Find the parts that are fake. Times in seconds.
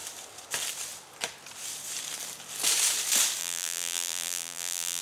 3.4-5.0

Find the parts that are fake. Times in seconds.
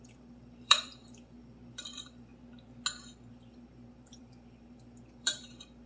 0.0-2.3; 3.3-5.9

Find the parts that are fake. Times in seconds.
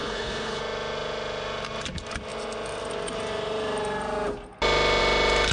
0.0-0.6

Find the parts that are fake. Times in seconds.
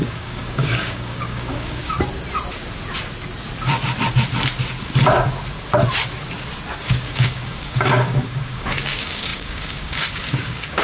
0.0-1.8; 6.8-10.8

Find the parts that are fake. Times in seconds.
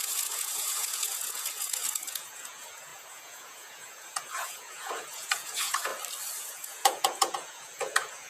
0.0-5.9; 6.4-8.3